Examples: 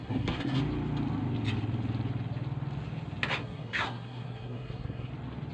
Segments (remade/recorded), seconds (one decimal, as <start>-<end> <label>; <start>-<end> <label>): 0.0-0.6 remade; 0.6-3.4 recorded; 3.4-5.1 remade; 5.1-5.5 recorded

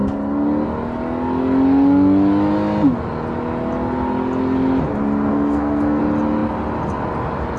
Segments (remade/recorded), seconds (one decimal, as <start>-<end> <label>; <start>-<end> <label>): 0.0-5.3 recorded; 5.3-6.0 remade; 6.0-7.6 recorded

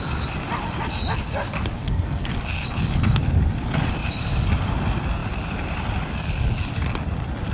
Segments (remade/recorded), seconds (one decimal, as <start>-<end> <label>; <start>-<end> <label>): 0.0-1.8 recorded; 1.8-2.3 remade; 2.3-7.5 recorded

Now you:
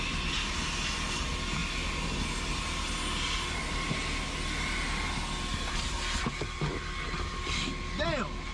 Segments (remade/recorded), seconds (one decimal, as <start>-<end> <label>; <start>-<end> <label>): 0.0-8.5 recorded